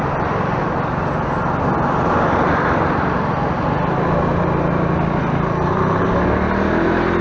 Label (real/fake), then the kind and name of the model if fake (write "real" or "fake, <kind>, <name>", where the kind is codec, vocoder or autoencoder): real